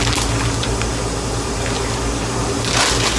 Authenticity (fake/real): real